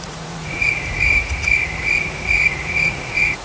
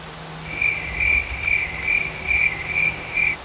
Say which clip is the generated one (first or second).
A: first